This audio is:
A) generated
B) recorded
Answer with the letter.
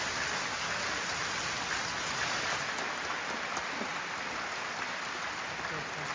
B